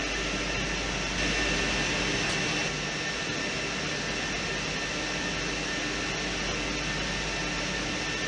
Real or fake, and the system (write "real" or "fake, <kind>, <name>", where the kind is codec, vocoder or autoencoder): real